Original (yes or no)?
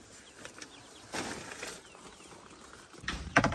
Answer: yes